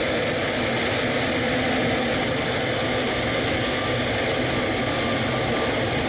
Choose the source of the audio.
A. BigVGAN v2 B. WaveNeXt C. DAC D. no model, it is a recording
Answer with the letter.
D